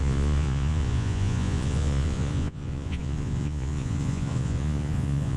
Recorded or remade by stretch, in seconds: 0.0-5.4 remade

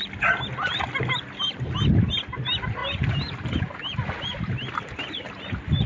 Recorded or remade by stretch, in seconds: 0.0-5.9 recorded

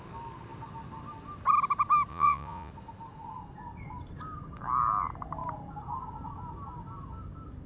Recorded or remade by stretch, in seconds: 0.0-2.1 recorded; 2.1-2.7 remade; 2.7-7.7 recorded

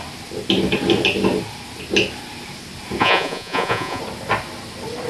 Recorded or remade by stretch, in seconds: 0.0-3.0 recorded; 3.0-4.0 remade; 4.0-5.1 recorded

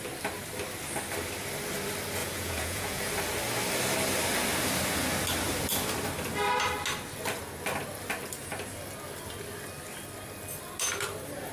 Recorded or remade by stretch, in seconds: 0.0-2.2 recorded; 2.2-3.0 remade; 3.0-11.5 recorded

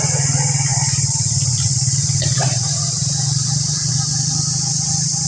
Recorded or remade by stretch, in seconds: 0.0-5.3 recorded

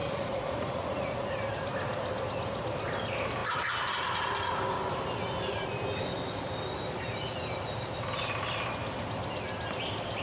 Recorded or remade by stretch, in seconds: 0.0-1.3 remade; 1.3-10.2 recorded